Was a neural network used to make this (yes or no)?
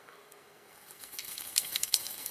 yes